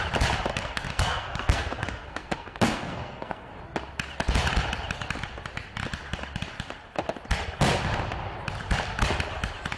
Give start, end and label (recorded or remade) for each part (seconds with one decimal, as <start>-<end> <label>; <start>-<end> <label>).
0.0-0.5 recorded; 0.5-3.5 remade; 3.5-9.8 recorded